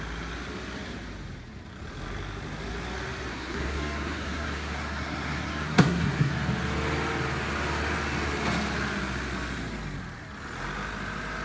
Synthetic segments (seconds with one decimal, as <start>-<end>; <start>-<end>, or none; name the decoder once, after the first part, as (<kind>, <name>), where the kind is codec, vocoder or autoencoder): 3.3-6.3 (codec, SNAC)